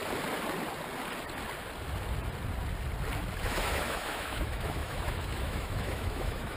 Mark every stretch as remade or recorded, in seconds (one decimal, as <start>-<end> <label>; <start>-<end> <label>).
0.0-3.4 recorded; 3.4-6.6 remade